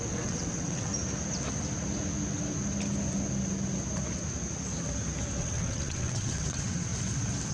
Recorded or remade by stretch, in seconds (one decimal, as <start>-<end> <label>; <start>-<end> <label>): 0.0-0.9 remade; 0.9-5.4 recorded; 5.4-6.9 remade; 6.9-7.5 recorded